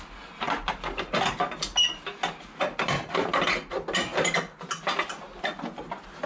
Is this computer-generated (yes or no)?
no